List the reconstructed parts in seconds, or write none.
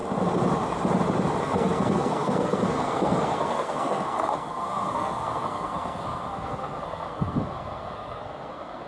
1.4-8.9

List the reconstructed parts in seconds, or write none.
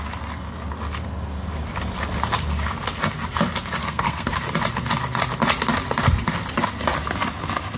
3.8-4.4